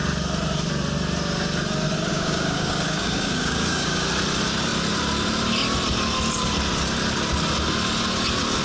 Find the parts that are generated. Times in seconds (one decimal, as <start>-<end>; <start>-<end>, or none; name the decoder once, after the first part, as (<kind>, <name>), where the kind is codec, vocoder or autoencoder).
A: 2.1-4.1 (codec, DAC)